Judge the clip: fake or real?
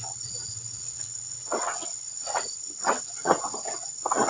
fake